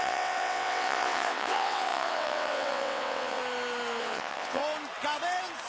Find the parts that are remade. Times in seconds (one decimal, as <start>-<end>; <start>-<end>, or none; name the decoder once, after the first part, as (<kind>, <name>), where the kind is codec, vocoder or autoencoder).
0.0-3.4 (vocoder, WaveNeXt); 4.0-4.6